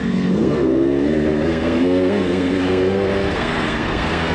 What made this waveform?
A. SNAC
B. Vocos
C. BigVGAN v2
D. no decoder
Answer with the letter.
A